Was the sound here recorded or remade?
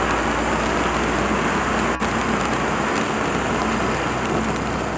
recorded